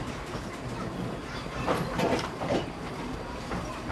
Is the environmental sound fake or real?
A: fake